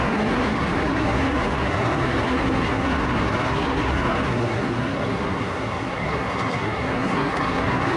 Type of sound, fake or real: fake